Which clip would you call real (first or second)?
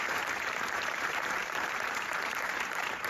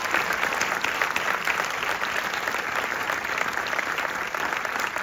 second